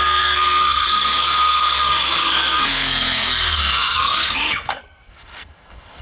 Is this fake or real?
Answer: fake